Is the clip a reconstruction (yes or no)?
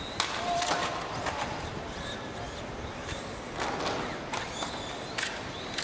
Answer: no